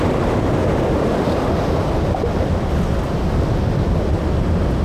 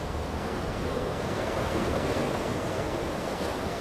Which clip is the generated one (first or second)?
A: second